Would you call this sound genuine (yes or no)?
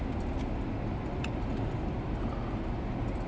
yes